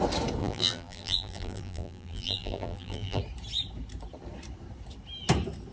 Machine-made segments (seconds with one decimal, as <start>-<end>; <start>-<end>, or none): 0.4-3.2